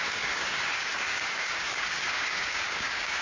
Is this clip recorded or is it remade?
remade